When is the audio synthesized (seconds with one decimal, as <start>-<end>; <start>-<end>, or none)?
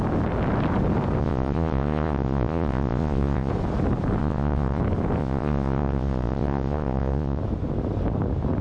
1.2-3.5; 4.2-4.8; 5.2-7.4